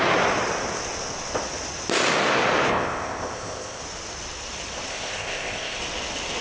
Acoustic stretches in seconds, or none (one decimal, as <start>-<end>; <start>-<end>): 0.0-2.7; 3.8-4.9; 5.8-6.4